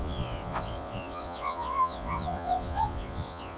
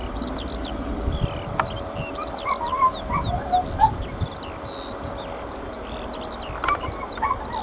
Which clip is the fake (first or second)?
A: first